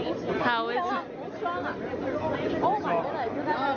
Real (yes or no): yes